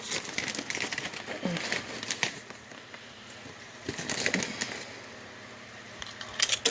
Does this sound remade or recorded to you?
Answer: recorded